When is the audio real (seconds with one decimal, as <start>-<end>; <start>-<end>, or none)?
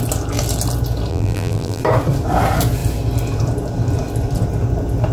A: 0.0-1.1; 1.8-5.1